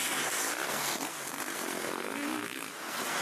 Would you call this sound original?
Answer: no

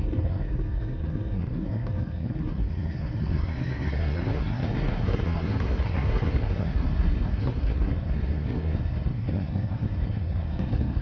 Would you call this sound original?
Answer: no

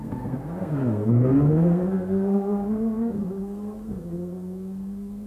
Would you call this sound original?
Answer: no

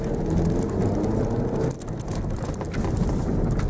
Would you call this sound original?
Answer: yes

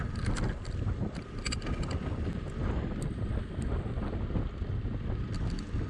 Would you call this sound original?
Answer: yes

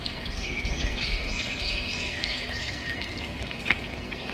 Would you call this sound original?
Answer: no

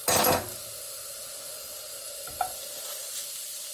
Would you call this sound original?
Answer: yes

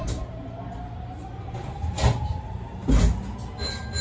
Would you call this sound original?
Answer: yes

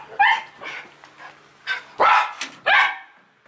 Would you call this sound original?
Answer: yes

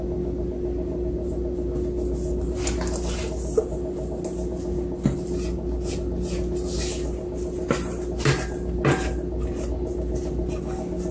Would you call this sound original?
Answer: yes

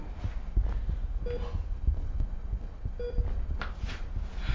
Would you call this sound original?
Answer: yes